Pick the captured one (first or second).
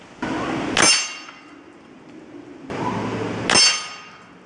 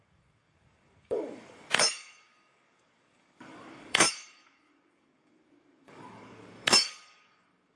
first